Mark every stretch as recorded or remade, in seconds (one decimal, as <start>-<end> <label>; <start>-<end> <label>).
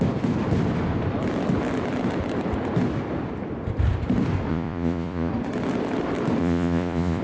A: 0.0-4.5 recorded; 4.5-5.3 remade; 5.3-6.4 recorded; 6.4-7.2 remade